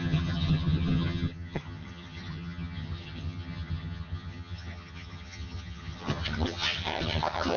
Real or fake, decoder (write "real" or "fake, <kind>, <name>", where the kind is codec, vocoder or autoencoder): fake, vocoder, HiFi-GAN